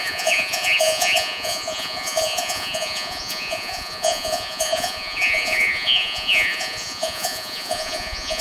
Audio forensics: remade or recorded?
remade